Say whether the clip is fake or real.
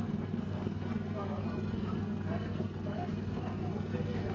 fake